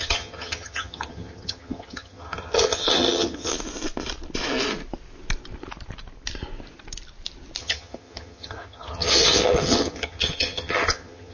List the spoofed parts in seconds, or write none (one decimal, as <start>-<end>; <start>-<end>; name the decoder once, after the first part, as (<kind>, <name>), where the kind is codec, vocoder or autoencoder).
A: 0.0-3.5 (vocoder, HiFi-GAN); 7.6-11.3